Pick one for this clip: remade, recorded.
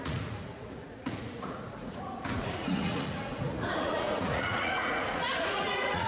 remade